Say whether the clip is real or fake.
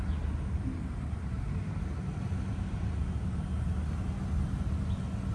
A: real